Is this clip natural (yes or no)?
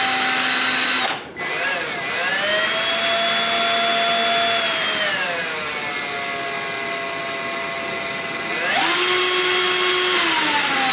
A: yes